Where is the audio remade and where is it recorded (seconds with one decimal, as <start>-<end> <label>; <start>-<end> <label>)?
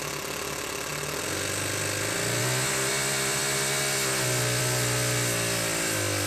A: 0.0-6.3 recorded